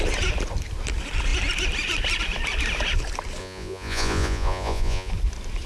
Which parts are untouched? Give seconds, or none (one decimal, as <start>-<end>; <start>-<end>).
0.0-3.4; 5.1-5.7